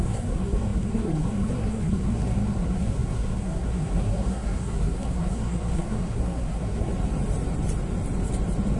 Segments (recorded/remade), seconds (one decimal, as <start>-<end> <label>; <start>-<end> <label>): 0.0-6.9 remade; 6.9-8.8 recorded

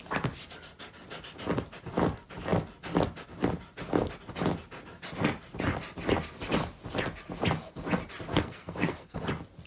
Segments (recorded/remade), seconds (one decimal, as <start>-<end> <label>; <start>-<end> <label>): 0.0-8.3 recorded; 8.3-9.2 remade; 9.2-9.7 recorded

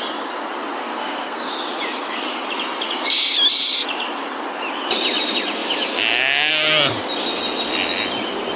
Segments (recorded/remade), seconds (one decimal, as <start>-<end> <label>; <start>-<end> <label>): 0.0-0.8 recorded; 0.8-1.5 remade; 1.5-8.6 recorded

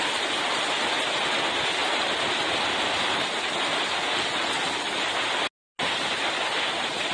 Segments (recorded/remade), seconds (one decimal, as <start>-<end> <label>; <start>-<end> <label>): 0.0-7.1 recorded

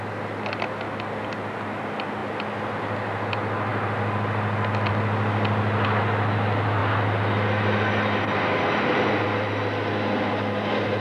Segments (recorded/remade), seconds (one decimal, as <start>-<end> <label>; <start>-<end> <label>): 0.0-11.0 recorded

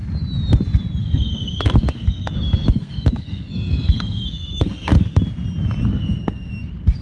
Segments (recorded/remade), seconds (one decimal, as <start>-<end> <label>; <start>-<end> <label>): 0.0-1.0 recorded; 1.0-5.2 remade; 5.2-5.9 recorded; 5.9-6.5 remade; 6.5-7.0 recorded

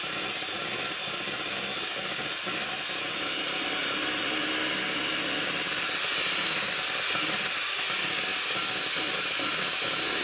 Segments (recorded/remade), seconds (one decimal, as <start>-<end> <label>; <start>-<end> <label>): 0.0-10.2 recorded